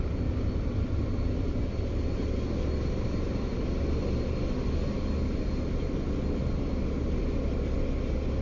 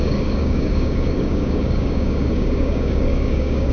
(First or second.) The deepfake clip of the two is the second